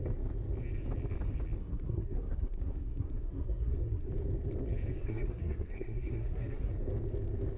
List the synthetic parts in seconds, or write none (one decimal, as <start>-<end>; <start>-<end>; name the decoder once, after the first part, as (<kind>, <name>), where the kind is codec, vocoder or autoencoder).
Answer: 1.6-4.1 (codec, SNAC); 5.0-6.7